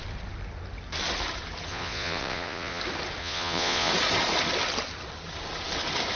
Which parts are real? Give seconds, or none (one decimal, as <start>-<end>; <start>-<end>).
0.0-1.7; 2.8-3.2; 3.9-6.2